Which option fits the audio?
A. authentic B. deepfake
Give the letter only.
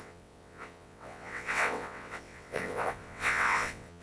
B